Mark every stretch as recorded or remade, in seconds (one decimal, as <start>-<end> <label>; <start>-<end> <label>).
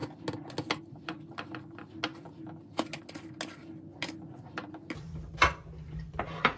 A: 0.0-6.6 recorded